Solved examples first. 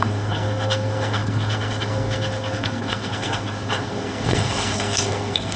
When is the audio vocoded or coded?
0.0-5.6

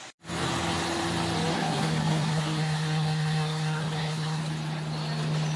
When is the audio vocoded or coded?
1.5-4.4